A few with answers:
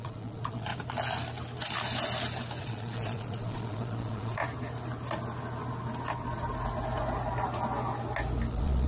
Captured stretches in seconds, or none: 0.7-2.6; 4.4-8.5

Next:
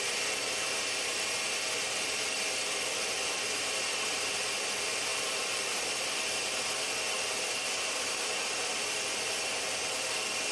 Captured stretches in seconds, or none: 0.0-10.5

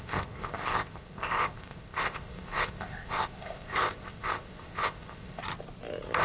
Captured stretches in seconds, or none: 5.4-6.2

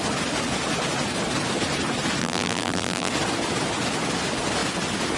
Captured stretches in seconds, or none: 0.0-2.2; 3.1-5.2

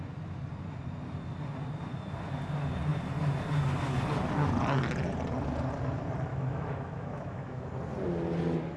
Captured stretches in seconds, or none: 0.0-6.3; 7.7-8.8

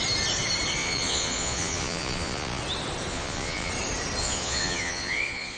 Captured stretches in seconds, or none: 0.0-0.8; 2.6-3.1; 3.7-4.2